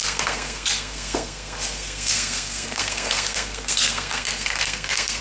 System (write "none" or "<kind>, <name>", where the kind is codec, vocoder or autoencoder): codec, SNAC